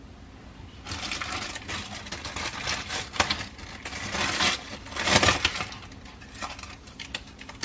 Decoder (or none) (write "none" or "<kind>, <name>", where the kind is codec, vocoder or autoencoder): none